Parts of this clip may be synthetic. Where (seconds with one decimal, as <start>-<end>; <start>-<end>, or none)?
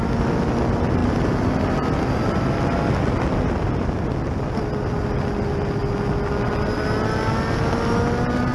1.0-1.7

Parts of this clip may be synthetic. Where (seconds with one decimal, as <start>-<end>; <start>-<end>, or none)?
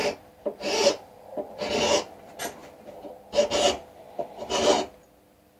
0.0-1.1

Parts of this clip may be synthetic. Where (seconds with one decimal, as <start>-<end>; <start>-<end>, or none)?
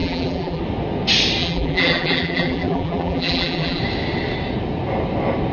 0.0-0.6; 1.4-3.8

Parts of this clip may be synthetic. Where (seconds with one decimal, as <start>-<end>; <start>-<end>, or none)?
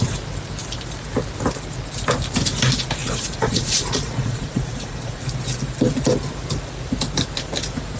3.0-5.2